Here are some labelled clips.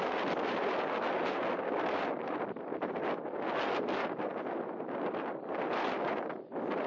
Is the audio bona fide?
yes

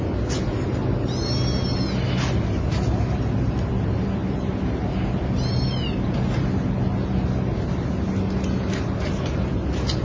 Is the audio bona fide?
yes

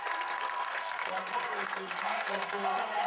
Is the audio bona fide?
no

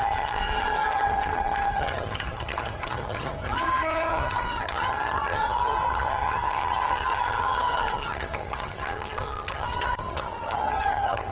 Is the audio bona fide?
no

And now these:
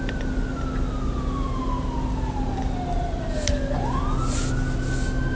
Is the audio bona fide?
yes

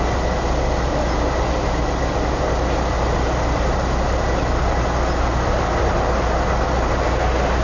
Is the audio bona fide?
yes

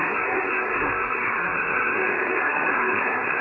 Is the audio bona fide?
no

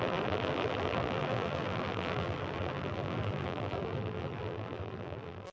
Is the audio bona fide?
no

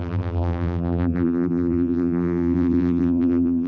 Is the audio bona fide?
no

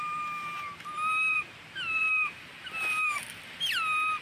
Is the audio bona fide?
yes